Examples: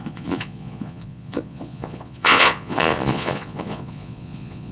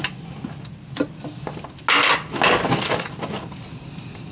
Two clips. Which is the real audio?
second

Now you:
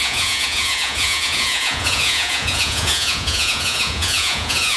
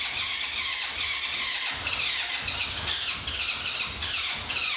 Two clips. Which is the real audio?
second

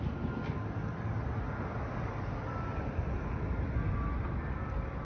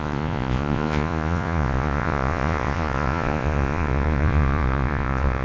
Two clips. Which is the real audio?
first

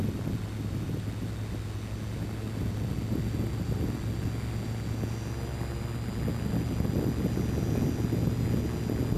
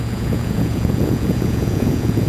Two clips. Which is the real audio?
first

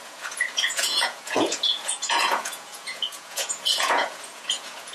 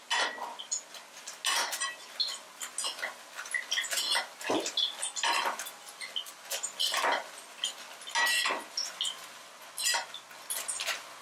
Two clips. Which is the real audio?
second